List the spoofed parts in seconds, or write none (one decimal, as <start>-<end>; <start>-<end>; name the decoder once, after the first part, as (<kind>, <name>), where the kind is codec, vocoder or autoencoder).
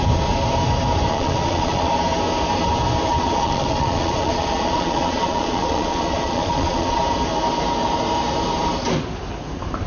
1.1-1.9 (vocoder, Vocos); 3.1-7.0